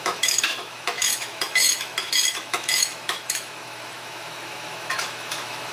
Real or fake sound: fake